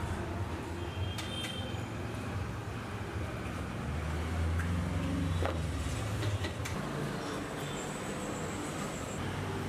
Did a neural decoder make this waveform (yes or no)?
no